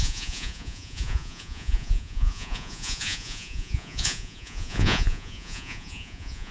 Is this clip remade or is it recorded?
remade